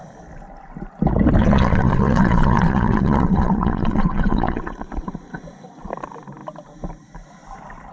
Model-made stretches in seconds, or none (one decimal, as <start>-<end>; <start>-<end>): 1.4-5.9